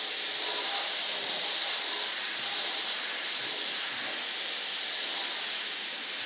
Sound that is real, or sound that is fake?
real